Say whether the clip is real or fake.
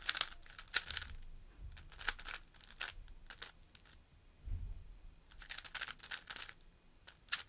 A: real